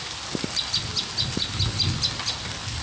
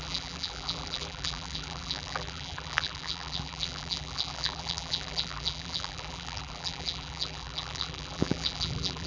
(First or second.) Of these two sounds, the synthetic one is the second